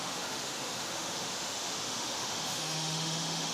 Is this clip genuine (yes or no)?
no